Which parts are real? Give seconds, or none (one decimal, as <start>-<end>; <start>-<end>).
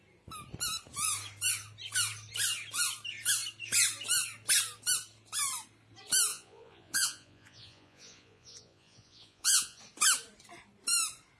0.0-6.3; 9.8-11.4